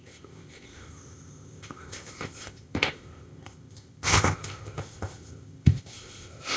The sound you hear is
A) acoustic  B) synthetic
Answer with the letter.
B